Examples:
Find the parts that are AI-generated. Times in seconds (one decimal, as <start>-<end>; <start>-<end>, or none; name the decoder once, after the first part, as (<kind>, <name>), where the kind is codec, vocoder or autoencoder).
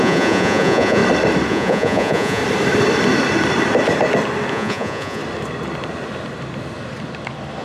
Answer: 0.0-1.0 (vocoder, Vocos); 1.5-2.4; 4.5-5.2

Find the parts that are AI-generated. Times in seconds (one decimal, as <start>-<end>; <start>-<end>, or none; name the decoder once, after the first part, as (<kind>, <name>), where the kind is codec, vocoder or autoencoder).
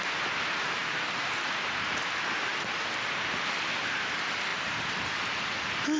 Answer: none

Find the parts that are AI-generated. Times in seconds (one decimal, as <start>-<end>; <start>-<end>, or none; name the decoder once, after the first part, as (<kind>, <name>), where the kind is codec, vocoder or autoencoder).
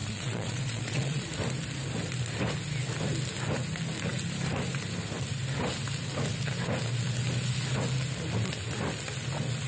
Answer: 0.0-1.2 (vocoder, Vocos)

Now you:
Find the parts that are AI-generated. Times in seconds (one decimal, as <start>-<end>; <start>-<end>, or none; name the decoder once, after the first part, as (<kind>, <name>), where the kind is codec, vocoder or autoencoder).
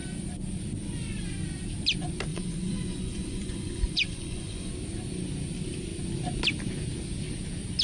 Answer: 2.3-4.7 (vocoder, Vocos)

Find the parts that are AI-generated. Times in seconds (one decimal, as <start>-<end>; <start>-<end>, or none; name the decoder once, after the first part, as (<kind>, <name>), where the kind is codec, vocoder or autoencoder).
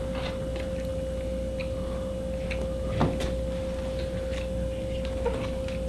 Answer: none